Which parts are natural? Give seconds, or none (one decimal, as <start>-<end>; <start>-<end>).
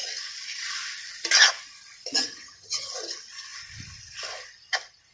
0.0-2.2; 2.9-5.1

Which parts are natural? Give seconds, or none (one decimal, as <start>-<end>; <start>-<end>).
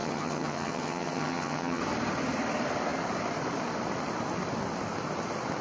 1.8-5.6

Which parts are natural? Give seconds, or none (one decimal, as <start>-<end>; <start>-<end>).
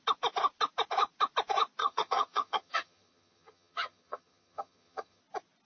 0.0-1.8; 5.2-5.7